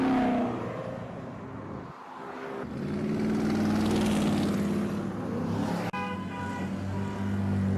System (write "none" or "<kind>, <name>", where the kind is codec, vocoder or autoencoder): none